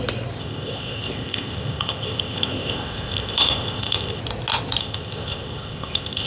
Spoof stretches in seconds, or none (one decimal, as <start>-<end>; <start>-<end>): 0.4-4.2; 4.8-6.3